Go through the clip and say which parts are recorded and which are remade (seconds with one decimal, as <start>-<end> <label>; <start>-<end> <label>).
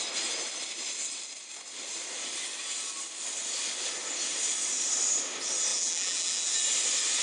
0.0-5.7 recorded; 5.7-6.5 remade; 6.5-7.2 recorded